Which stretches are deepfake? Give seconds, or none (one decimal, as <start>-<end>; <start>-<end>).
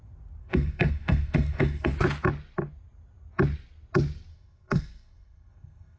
0.4-1.9; 4.3-6.0